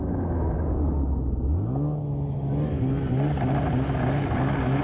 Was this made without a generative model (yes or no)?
yes